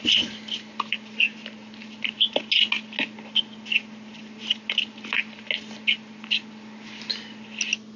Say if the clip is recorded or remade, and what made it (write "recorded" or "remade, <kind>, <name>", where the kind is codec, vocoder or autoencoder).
recorded